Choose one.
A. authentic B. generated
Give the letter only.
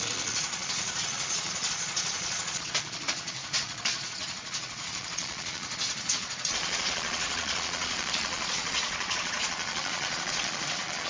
B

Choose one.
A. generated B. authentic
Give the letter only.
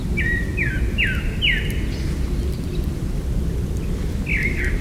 B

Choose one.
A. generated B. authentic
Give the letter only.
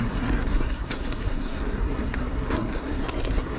A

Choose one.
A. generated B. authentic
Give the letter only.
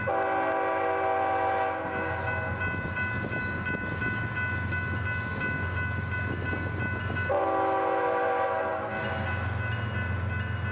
B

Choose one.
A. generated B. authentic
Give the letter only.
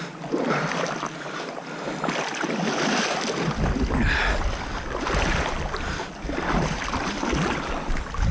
B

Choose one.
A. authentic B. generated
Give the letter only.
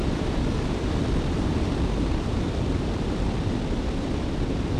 B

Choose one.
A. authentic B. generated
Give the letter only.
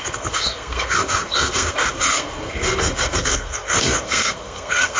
B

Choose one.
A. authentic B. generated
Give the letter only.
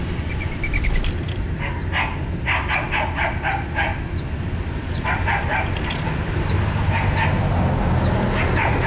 A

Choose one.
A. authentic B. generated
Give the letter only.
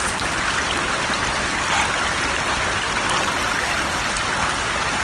A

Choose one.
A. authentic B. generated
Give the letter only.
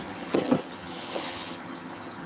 B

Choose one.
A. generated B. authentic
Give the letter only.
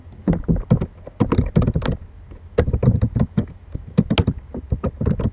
B